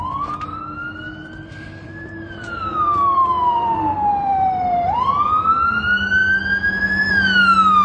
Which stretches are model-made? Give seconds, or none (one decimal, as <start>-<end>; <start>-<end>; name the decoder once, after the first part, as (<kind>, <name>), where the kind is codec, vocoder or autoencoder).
1.2-5.7 (vocoder, BigVGAN v2)

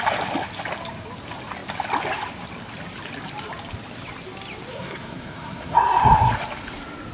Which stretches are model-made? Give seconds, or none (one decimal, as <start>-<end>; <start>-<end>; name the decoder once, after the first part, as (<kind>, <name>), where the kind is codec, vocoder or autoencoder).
4.7-6.3 (codec, SNAC)